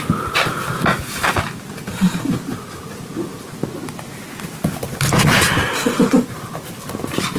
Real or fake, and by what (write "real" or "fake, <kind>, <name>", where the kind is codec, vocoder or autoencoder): real